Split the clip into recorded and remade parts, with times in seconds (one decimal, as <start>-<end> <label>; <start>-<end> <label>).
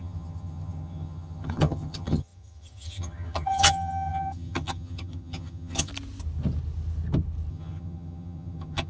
0.0-5.9 remade; 5.9-7.5 recorded; 7.5-8.9 remade